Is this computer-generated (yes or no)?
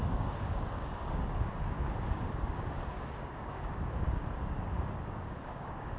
yes